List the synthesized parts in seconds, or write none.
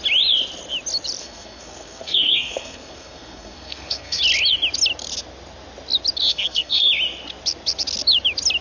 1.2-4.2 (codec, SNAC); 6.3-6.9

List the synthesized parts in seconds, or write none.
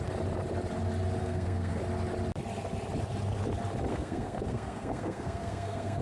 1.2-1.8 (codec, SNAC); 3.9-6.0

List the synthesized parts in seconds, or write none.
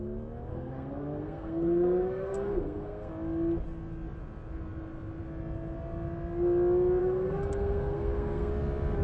0.5-3.1 (codec, SNAC); 7.0-8.5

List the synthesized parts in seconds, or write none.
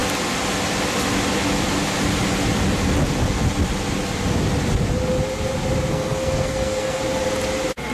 5.9-7.0 (codec, SNAC)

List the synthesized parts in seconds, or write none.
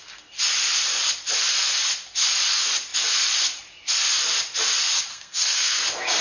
5.1-5.8 (codec, SNAC)